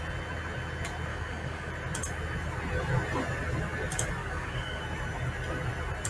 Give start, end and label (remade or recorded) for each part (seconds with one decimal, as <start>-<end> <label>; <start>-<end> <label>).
0.0-1.1 recorded; 1.1-1.7 remade; 1.7-4.2 recorded; 4.2-4.8 remade; 4.8-6.1 recorded